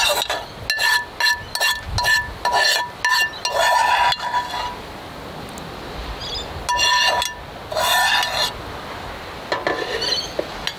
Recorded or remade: recorded